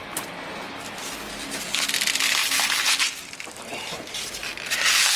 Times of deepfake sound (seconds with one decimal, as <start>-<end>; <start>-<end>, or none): 2.4-4.4